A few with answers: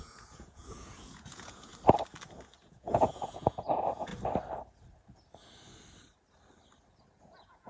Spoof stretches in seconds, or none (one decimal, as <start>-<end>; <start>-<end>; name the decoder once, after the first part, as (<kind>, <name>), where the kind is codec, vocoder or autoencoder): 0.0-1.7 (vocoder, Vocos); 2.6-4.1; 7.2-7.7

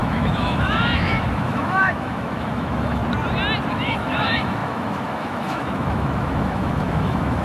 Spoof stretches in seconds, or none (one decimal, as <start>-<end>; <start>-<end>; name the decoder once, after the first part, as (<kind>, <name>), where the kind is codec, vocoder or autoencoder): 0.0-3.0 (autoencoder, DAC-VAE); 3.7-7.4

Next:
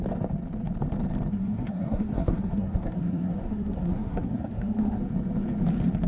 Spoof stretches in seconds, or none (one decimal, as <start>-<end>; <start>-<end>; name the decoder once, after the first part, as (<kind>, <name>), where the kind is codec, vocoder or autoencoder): 1.3-5.0 (codec, SNAC)

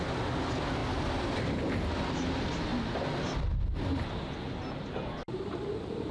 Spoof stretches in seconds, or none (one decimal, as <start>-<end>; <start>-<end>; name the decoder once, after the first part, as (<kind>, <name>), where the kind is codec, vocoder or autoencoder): 0.8-1.6 (vocoder, BigVGAN v2)

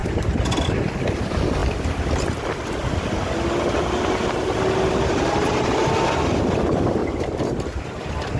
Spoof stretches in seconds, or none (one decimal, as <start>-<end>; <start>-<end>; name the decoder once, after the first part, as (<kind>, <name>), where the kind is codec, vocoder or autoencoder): 7.0-8.4 (vocoder, BigVGAN v2)

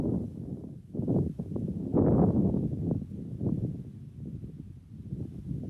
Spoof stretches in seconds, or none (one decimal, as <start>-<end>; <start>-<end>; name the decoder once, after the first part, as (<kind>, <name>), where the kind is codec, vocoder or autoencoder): 0.5-1.4 (vocoder, BigVGAN v2)

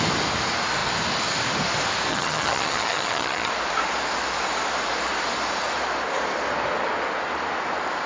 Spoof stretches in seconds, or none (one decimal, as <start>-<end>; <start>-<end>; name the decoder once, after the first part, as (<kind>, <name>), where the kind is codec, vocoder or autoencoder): 2.1-3.5 (vocoder, HiFi-GAN)